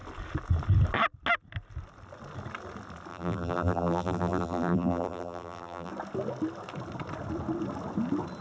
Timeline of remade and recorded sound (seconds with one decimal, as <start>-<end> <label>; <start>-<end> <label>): 0.0-3.1 recorded; 3.1-5.9 remade; 5.9-8.4 recorded